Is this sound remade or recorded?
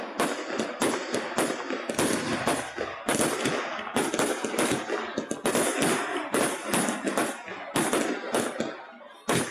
recorded